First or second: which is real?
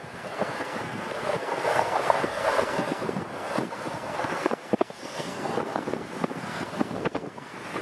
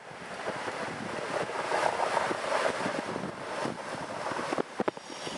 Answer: second